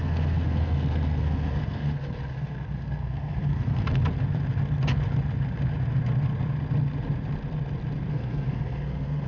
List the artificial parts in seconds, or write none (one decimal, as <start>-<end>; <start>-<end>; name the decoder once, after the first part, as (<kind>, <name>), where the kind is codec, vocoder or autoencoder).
0.0-4.0 (codec, SNAC); 8.1-9.3